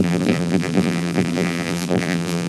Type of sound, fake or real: fake